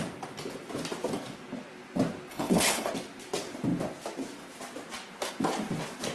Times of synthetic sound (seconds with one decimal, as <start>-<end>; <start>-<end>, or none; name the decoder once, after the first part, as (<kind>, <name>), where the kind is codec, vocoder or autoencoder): 2.3-2.9 (codec, HILCodec)